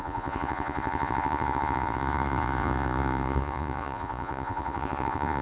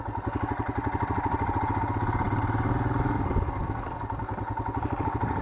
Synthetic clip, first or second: first